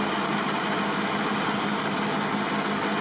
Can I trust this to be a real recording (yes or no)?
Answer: yes